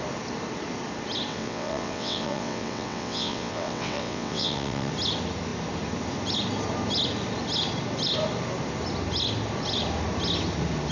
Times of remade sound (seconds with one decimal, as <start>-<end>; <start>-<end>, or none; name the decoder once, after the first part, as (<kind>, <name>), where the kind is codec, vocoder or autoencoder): 1.3-4.9 (vocoder, WaveNeXt)